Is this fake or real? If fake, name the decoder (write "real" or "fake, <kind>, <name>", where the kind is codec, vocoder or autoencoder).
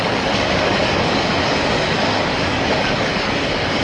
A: fake, codec, DAC